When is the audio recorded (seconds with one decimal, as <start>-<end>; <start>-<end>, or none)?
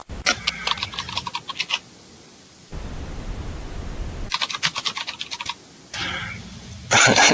0.0-1.5